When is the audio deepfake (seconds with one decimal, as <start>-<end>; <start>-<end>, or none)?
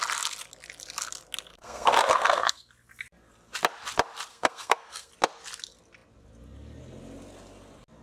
1.5-2.7; 4.3-5.1